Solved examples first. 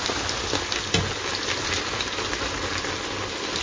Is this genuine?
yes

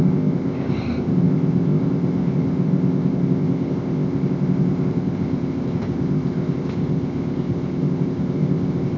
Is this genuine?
no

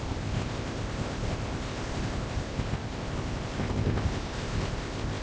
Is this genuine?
no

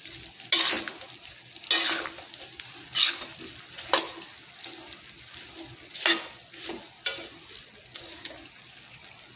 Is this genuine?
yes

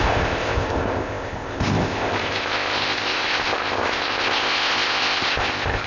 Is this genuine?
no